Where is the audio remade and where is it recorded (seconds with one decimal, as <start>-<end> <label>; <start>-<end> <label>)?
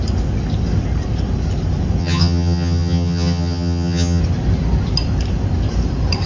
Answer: 0.0-2.0 recorded; 2.0-4.2 remade; 4.2-6.3 recorded